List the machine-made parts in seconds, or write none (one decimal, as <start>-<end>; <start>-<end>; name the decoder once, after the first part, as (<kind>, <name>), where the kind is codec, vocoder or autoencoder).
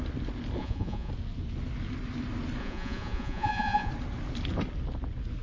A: 0.6-1.1 (vocoder, Vocos); 2.6-3.9